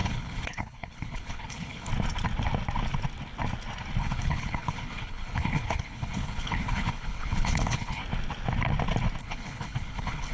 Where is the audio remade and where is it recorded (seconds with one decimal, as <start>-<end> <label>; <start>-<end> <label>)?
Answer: 0.0-1.9 remade; 1.9-4.0 recorded; 4.0-8.0 remade; 8.0-9.2 recorded; 9.2-10.3 remade